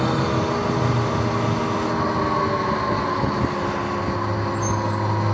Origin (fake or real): real